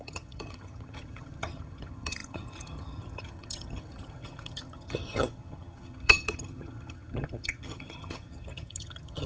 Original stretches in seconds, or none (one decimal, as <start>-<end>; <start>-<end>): none